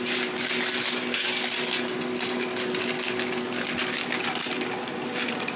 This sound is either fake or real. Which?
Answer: real